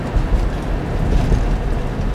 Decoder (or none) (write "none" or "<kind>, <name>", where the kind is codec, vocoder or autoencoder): none